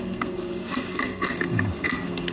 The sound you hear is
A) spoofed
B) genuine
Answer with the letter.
A